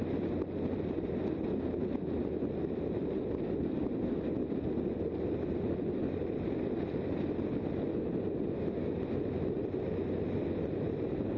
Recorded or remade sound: recorded